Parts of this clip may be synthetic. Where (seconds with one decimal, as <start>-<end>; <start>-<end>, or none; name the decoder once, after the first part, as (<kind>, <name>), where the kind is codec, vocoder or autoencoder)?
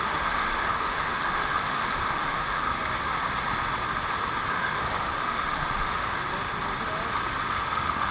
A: 0.0-2.7 (autoencoder, DAC-VAE); 4.5-6.2; 7.6-8.1